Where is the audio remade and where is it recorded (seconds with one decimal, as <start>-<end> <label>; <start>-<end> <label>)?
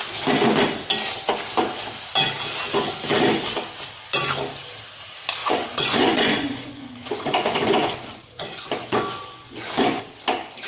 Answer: 0.0-5.4 recorded; 5.4-10.0 remade; 10.0-10.7 recorded